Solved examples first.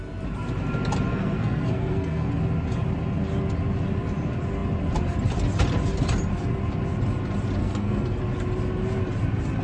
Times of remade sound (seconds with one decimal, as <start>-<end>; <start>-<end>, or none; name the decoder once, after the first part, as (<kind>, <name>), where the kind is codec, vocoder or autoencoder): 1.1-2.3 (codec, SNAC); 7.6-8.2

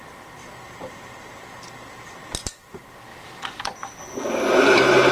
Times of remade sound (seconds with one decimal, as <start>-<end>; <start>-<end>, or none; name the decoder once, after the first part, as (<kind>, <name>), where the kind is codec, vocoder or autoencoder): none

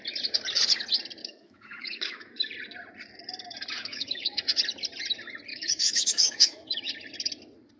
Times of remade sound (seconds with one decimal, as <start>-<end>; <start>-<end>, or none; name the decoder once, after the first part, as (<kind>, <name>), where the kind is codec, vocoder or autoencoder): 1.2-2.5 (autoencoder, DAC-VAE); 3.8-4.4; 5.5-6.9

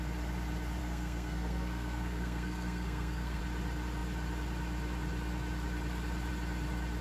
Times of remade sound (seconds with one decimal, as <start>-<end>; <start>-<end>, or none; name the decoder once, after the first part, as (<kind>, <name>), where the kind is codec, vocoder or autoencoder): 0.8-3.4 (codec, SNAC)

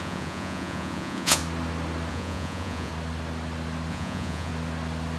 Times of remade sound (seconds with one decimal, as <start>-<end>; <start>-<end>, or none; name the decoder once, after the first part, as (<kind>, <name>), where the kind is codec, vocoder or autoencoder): 0.0-1.4 (vocoder, Vocos); 2.1-2.9; 3.9-4.5